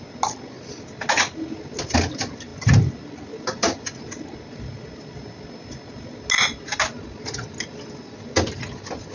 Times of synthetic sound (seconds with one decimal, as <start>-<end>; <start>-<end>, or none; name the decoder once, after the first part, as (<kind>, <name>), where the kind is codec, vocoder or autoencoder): none